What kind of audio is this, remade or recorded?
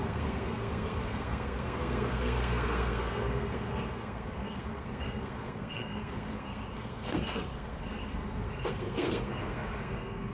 remade